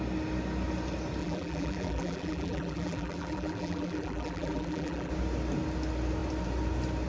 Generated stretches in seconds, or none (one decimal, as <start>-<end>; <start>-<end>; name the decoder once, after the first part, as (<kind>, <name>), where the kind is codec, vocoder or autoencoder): 1.2-5.1 (vocoder, BigVGAN v2)